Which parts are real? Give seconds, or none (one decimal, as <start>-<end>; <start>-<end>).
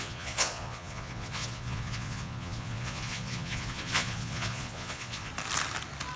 5.3-6.2